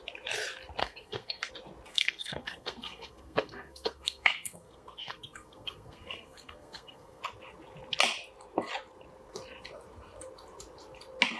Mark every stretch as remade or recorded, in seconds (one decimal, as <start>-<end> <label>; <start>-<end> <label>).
0.0-0.8 recorded; 0.8-1.5 remade; 1.5-1.9 recorded; 1.9-7.2 remade; 7.2-11.4 recorded